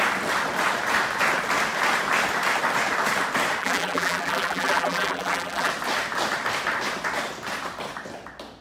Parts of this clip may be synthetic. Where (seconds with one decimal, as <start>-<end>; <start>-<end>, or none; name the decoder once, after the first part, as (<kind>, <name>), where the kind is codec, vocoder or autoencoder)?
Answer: 3.6-5.7 (vocoder, BigVGAN v2)